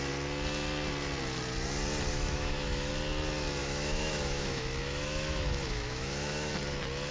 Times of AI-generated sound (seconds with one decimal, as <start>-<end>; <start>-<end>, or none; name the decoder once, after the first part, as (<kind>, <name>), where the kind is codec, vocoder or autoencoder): 2.1-2.9 (autoencoder, DAC-VAE); 3.6-6.5